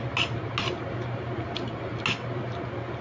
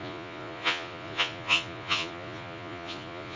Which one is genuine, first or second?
first